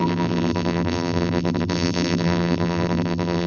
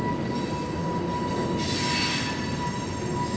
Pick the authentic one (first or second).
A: second